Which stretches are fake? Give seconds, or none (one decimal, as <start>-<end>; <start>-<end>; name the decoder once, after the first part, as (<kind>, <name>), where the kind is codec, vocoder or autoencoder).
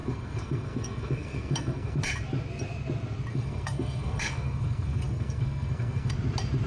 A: 0.0-2.0 (codec, SNAC); 3.3-6.1